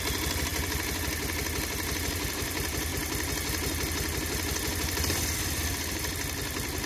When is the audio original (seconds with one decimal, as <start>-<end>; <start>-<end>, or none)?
0.5-2.1; 2.9-6.9